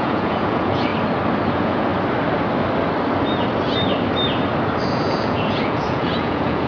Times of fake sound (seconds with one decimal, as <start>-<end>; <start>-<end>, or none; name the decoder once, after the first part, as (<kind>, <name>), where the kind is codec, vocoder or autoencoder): 0.0-0.9 (vocoder, Vocos); 1.5-1.9; 4.9-6.7